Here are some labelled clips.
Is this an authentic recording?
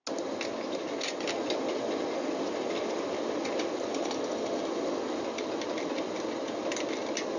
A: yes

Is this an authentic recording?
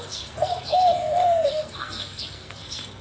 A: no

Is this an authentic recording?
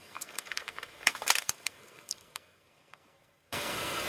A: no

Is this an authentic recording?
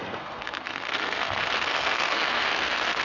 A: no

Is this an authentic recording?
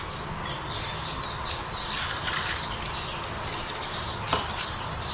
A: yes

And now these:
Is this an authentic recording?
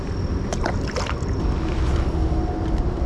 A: yes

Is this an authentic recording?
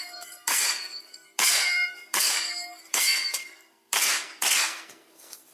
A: no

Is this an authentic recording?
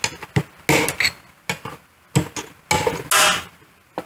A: yes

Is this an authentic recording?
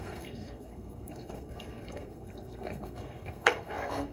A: no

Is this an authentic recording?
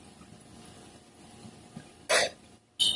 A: yes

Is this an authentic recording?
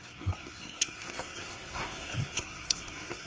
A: no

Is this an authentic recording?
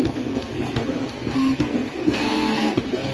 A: no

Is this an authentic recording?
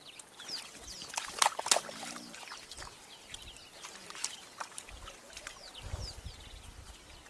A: yes